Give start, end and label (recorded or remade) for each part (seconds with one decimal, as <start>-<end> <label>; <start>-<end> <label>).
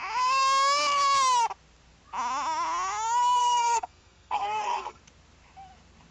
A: 0.0-3.4 recorded; 3.4-5.0 remade; 5.0-6.1 recorded